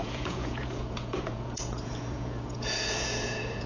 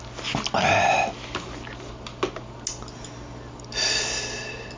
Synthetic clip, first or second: first